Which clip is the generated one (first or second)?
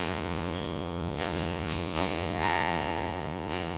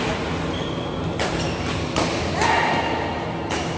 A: first